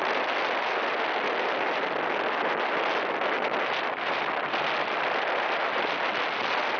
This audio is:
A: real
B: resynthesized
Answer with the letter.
A